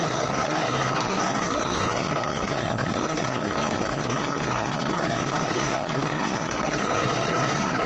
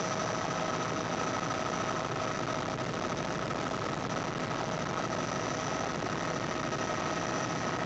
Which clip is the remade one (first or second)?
first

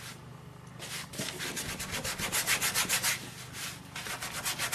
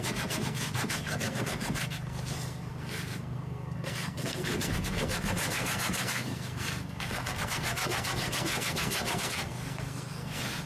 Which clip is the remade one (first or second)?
second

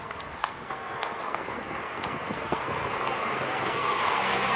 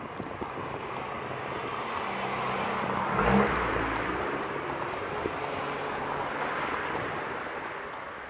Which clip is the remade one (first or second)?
first